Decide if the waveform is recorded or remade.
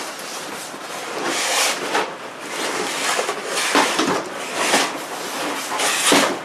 recorded